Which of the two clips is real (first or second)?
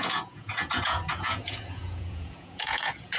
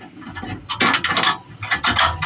second